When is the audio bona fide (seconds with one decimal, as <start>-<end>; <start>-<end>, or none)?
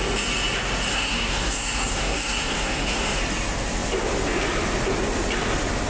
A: 0.0-0.9; 3.2-5.9